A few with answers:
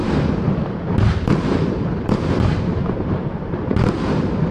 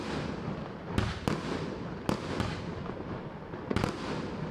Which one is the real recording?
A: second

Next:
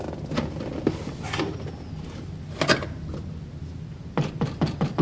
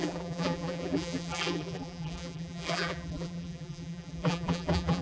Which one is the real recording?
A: first